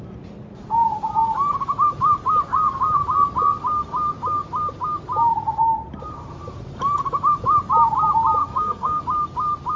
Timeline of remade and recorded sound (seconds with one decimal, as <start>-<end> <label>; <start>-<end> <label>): 0.0-8.4 recorded; 8.4-9.0 remade; 9.0-9.8 recorded